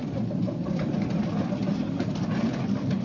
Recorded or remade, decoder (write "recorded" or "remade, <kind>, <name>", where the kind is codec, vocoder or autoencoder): recorded